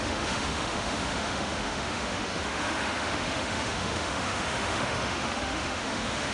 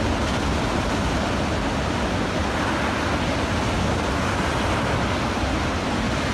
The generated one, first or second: first